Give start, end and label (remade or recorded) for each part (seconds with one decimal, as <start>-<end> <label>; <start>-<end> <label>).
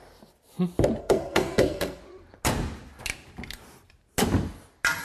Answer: 0.0-1.0 recorded; 1.0-2.0 remade; 2.0-5.0 recorded